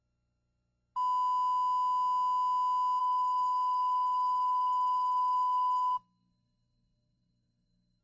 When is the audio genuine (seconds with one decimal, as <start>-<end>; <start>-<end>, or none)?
0.0-3.0